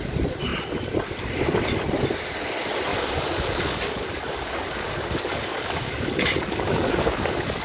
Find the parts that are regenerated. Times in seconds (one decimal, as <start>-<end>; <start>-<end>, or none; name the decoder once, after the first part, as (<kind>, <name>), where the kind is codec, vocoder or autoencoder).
2.9-7.6 (codec, DAC)